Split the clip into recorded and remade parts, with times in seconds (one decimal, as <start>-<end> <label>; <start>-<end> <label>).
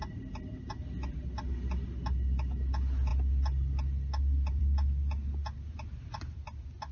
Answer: 0.0-6.9 recorded